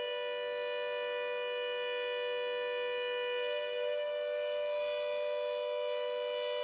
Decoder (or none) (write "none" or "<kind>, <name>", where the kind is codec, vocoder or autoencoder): none